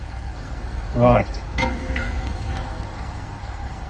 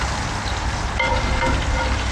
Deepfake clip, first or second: first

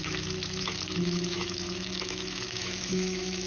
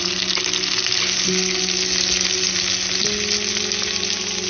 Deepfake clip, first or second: first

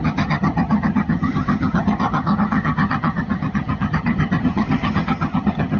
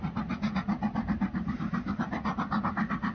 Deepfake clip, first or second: first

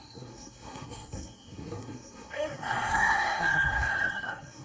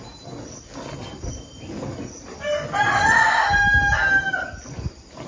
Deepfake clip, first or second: first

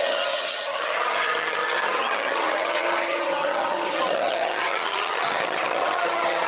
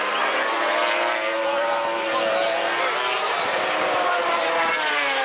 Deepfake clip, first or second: first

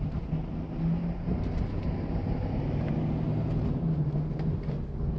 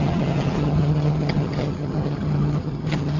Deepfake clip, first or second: second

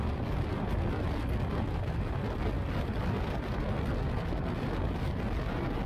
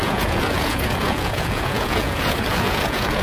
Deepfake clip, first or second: second